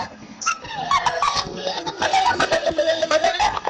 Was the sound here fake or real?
fake